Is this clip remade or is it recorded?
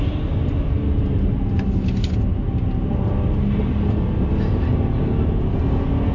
recorded